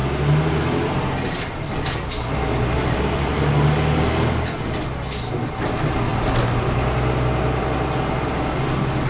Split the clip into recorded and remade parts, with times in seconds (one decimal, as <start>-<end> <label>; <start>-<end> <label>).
0.0-9.1 recorded